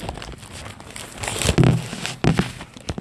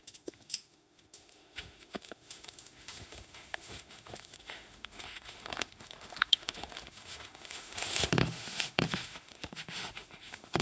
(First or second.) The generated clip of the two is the second